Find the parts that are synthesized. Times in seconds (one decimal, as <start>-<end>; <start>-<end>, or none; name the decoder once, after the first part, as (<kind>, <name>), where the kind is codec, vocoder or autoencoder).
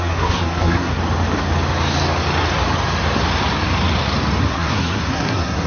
0.0-1.0 (codec, SNAC); 4.4-5.7